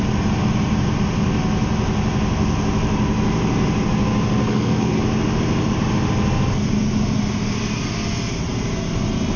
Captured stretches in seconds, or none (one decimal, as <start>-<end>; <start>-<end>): 0.0-4.4; 5.0-9.4